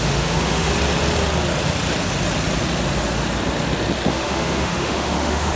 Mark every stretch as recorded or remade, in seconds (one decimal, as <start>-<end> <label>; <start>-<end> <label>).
0.0-0.7 remade; 0.7-4.1 recorded; 4.1-5.6 remade

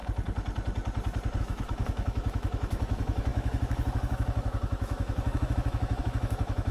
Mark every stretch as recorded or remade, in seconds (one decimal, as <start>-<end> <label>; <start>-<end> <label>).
0.0-1.4 recorded; 1.4-6.7 remade

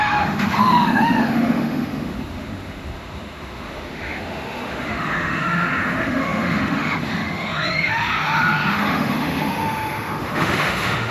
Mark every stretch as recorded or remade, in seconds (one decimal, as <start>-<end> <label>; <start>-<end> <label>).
0.0-11.1 remade

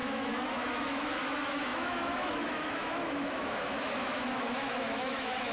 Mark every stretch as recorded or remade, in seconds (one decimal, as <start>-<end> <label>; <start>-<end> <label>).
0.0-5.5 remade

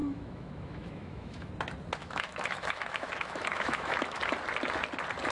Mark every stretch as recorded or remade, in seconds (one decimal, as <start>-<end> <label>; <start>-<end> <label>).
0.0-1.5 remade; 1.5-2.0 recorded; 2.0-4.2 remade; 4.2-5.3 recorded

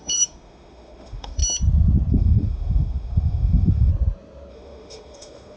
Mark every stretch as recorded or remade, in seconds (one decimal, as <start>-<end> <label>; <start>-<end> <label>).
0.0-1.4 remade; 1.4-2.1 recorded; 2.1-3.9 remade; 3.9-4.5 recorded; 4.5-5.6 remade

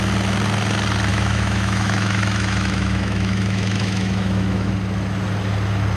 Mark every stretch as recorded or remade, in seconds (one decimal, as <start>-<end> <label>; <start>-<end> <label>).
0.0-1.1 recorded; 1.1-4.7 remade; 4.7-6.0 recorded

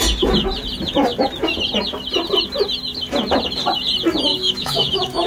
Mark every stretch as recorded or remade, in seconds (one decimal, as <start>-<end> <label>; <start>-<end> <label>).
0.0-4.3 recorded; 4.3-5.3 remade